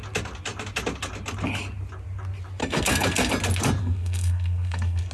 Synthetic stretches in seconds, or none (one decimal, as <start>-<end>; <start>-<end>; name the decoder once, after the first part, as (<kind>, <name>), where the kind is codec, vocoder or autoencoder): 2.6-3.3 (codec, SNAC); 3.8-5.1